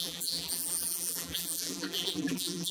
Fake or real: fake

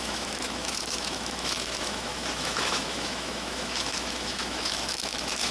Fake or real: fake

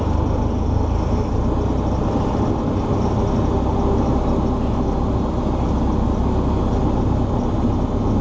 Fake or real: real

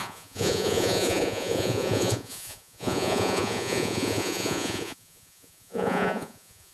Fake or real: fake